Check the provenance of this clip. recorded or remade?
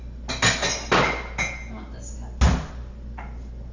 recorded